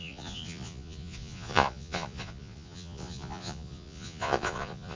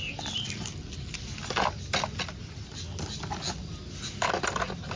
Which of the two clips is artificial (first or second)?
first